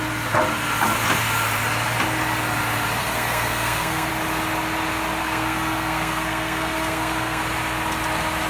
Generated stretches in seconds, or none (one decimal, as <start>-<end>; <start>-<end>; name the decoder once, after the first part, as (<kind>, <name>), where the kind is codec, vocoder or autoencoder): 3.0-4.1 (codec, SNAC); 5.2-7.4